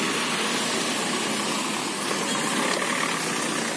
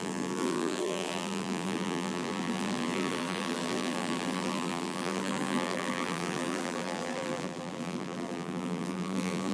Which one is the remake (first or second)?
second